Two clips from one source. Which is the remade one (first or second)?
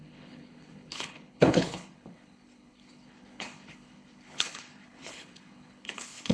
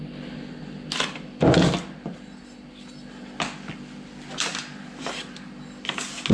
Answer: first